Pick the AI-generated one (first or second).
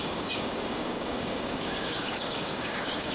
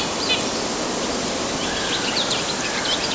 first